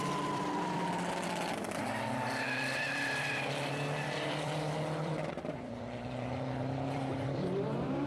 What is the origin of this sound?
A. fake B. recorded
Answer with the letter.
A